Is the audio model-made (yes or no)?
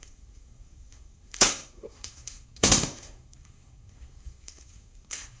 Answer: yes